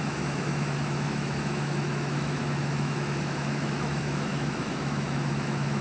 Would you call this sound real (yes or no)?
no